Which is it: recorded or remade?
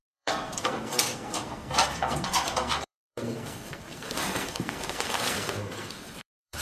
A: remade